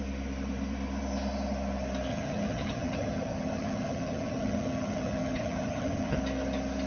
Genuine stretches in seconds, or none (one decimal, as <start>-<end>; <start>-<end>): 0.0-2.1; 6.2-6.9